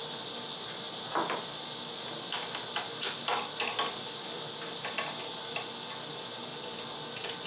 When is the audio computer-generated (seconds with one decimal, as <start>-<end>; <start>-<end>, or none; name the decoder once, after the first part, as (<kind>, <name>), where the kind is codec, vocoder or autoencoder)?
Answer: none